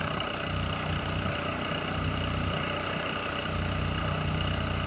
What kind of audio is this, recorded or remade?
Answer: remade